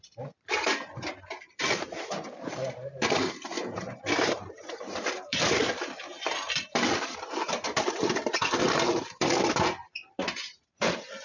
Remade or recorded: remade